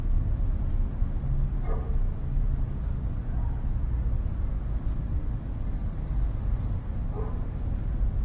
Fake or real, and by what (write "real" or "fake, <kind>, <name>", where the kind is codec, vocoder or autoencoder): real